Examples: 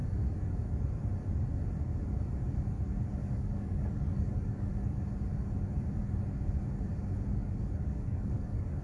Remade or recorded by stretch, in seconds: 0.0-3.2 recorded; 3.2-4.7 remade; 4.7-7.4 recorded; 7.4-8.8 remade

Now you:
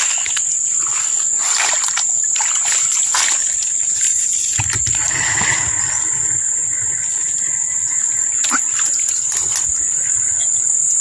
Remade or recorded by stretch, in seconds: 0.0-11.0 recorded

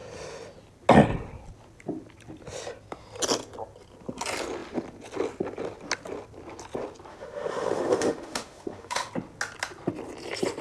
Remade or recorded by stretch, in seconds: 0.0-7.1 recorded; 7.1-9.1 remade; 9.1-10.6 recorded

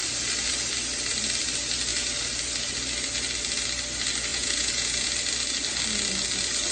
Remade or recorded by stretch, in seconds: 0.0-4.3 recorded; 4.3-5.1 remade; 5.1-6.7 recorded

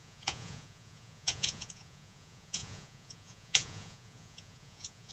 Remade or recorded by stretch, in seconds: 0.0-5.1 remade

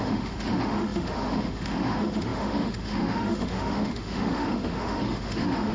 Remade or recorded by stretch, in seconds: 0.0-5.7 remade